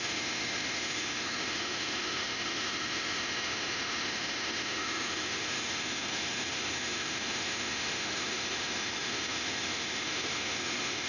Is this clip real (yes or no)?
no